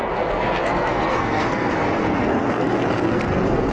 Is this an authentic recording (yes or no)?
no